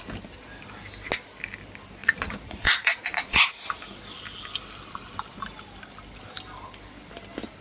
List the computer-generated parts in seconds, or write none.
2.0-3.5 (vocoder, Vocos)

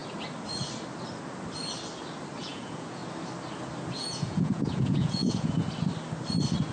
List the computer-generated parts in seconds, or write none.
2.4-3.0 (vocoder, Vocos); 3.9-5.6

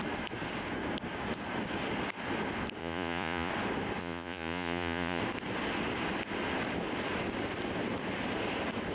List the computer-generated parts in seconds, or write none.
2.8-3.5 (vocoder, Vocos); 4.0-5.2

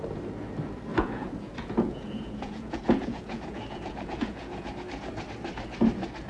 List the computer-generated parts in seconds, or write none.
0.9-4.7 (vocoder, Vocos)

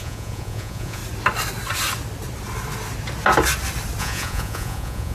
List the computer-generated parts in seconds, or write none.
0.0-1.0 (vocoder, Vocos); 4.0-5.1